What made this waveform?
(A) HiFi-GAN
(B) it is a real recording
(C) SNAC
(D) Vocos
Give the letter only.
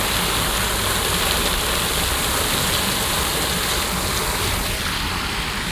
B